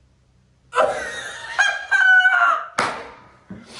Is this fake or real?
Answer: real